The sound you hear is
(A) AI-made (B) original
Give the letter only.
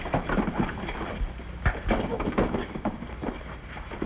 B